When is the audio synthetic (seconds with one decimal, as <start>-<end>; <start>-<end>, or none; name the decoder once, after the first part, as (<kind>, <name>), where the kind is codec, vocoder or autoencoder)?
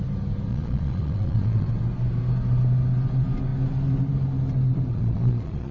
0.5-1.7 (vocoder, Vocos); 4.9-5.7